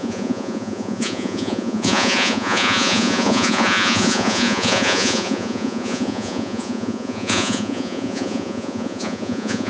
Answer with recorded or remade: remade